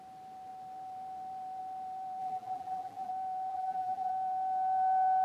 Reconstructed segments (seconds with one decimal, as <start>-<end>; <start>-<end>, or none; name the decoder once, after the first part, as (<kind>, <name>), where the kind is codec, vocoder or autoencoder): 2.2-3.1 (vocoder, BigVGAN v2); 3.5-4.1